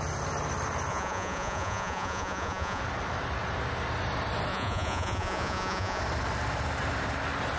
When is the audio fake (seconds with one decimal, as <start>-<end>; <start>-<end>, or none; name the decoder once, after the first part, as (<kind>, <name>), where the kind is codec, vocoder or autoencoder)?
0.9-2.8 (vocoder, Vocos); 4.5-6.0